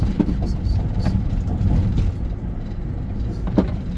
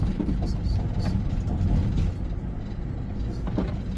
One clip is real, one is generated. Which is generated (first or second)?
first